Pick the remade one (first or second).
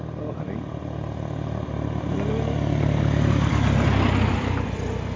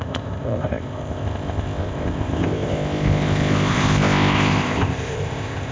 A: second